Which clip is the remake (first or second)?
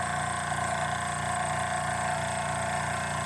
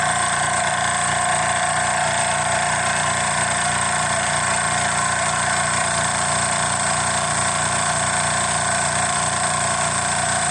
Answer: second